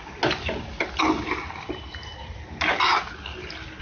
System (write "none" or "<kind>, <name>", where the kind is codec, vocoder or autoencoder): none